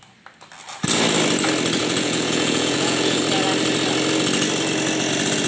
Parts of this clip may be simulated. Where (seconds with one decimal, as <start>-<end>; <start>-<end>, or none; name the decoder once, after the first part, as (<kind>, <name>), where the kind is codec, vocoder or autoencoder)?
1.8-3.2 (vocoder, Vocos)